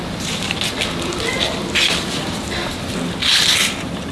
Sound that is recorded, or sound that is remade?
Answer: recorded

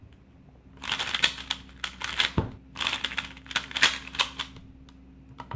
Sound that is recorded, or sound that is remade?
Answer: recorded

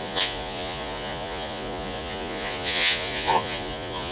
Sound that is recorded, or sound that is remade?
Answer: remade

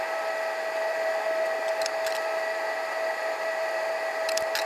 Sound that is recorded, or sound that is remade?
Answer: recorded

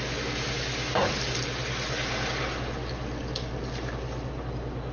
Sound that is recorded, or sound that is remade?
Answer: recorded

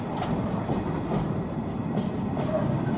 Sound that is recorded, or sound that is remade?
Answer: recorded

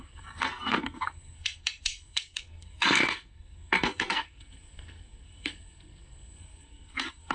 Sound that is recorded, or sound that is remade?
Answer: remade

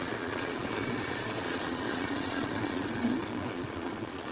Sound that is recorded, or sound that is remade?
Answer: remade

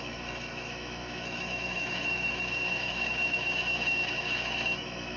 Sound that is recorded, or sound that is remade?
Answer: remade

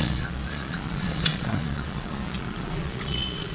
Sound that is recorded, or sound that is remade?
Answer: remade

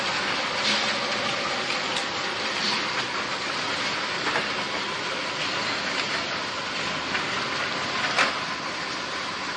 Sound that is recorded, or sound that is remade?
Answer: recorded